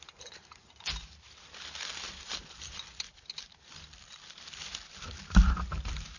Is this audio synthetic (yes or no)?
no